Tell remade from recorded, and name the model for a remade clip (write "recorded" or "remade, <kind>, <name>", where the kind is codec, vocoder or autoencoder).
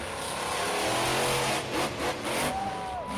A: recorded